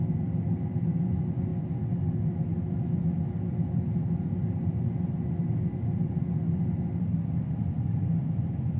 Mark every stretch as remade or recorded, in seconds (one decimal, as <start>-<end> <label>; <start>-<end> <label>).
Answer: 0.0-8.8 recorded